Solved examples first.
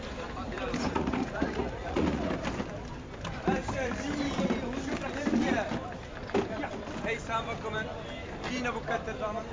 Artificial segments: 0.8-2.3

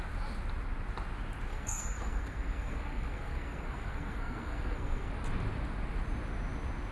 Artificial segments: 1.5-5.1

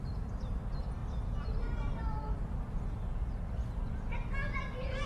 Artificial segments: none

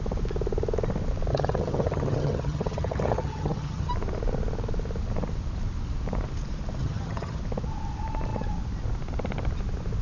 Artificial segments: 1.3-3.9; 6.8-7.4

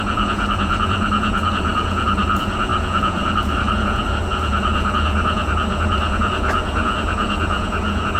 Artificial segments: 0.0-8.2

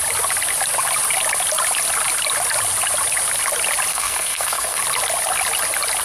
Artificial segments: 3.9-4.8